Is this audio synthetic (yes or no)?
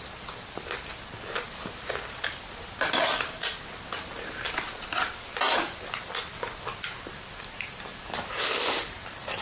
no